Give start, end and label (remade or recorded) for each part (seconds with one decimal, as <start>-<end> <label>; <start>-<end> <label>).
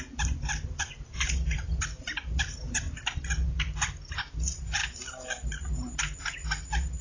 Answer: 0.0-7.0 recorded